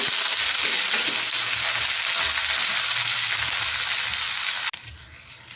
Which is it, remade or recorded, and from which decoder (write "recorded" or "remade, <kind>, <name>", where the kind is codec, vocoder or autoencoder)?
recorded